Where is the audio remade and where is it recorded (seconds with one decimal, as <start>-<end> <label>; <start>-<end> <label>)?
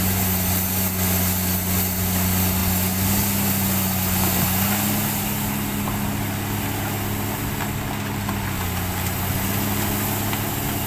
0.0-10.9 recorded